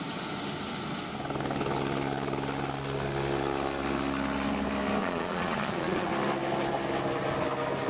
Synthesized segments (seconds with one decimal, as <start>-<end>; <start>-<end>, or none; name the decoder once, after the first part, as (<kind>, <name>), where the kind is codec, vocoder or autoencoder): 5.0-6.1 (vocoder, Vocos)